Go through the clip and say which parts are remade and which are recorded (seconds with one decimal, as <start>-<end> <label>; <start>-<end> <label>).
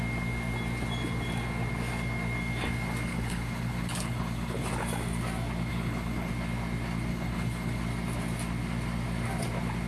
0.0-3.1 recorded; 3.1-4.7 remade; 4.7-5.7 recorded; 5.7-6.3 remade; 6.3-7.1 recorded; 7.1-7.8 remade; 7.8-9.9 recorded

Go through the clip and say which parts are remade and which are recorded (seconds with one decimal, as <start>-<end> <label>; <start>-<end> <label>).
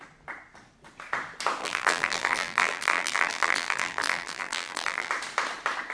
0.0-1.6 recorded; 1.6-5.1 remade; 5.1-5.9 recorded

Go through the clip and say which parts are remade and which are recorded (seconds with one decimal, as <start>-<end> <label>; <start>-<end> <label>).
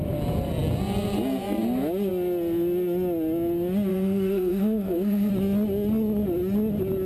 0.0-3.9 recorded; 3.9-5.3 remade; 5.3-7.1 recorded